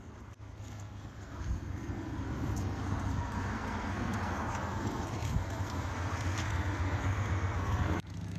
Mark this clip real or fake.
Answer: fake